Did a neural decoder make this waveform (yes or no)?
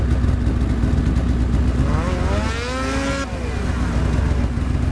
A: no